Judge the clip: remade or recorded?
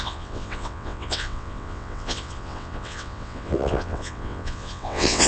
remade